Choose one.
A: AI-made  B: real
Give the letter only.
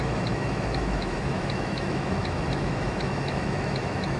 A